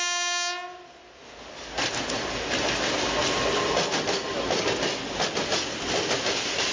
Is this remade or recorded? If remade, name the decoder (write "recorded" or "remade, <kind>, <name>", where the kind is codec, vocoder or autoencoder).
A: recorded